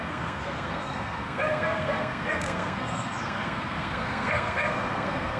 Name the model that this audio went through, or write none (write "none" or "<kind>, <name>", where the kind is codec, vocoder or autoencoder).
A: codec, SNAC